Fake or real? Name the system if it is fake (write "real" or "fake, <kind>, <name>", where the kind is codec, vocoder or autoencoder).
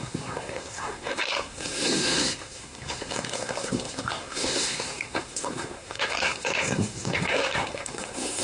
fake, codec, SNAC